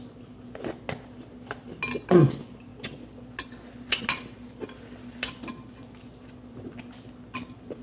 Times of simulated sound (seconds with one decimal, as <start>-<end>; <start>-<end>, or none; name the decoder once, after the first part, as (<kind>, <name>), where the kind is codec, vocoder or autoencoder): none